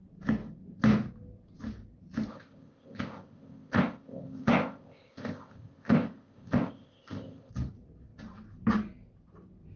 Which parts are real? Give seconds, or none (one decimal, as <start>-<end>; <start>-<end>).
0.0-2.3; 7.5-9.8